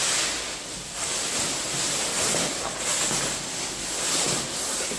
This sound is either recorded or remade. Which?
recorded